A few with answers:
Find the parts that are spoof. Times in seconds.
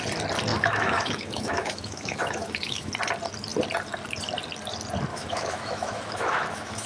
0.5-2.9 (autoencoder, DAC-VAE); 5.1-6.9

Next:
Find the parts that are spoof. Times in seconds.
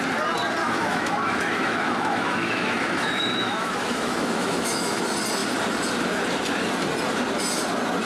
0.6-5.0 (autoencoder, DAC-VAE)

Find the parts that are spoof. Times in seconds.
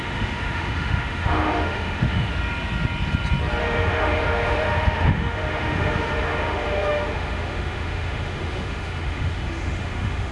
0.0-2.3 (autoencoder, DAC-VAE); 3.6-10.3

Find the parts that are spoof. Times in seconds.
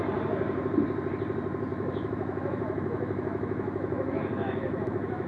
1.7-5.3 (autoencoder, DAC-VAE)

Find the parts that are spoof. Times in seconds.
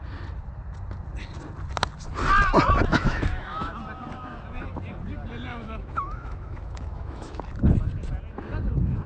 2.9-3.7 (autoencoder, DAC-VAE); 5.5-7.4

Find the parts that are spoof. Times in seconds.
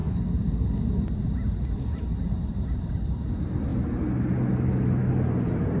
none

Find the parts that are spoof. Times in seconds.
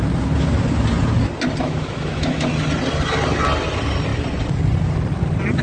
1.6-2.5 (autoencoder, DAC-VAE)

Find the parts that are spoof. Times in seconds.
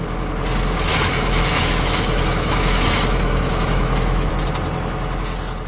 0.9-4.3 (autoencoder, DAC-VAE)